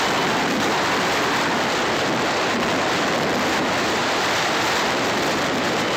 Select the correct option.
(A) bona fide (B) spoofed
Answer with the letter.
B